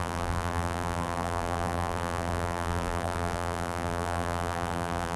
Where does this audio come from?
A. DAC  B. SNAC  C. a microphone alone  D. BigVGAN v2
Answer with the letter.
D